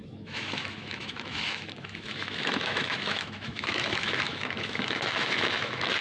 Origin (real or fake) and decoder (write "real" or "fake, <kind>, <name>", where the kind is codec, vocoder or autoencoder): fake, autoencoder, DAC-VAE